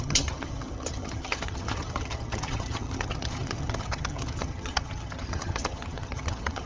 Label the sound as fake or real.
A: fake